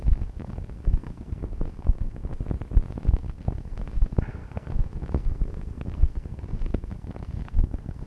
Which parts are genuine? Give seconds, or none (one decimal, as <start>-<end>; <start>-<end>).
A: 2.3-3.1